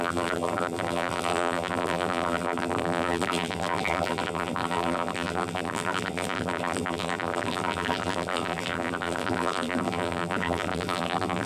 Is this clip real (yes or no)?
no